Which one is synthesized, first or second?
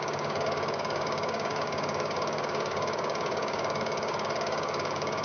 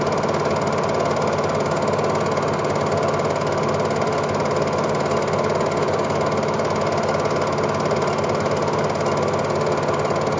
first